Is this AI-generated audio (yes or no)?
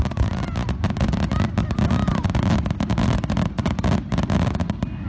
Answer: no